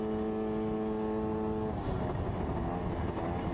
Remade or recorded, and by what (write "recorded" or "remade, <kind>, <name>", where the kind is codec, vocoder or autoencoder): recorded